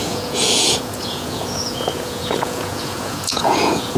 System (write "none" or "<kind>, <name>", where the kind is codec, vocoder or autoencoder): vocoder, Vocos